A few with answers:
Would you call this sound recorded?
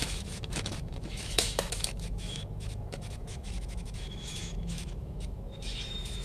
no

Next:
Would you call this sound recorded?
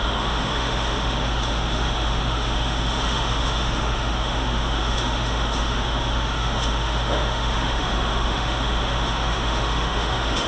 no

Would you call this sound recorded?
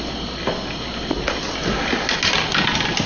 yes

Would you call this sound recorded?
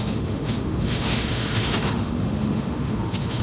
no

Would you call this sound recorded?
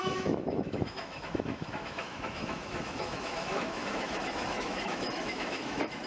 no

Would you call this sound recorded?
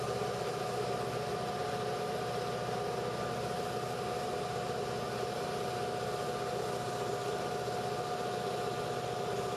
yes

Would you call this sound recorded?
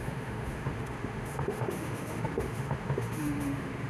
no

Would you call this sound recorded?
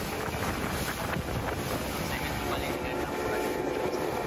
yes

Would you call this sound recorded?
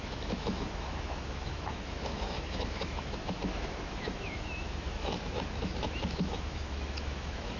no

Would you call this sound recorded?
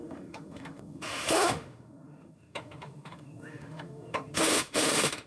no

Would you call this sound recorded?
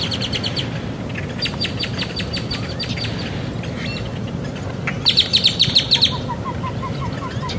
yes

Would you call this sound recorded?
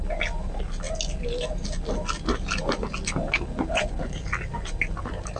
yes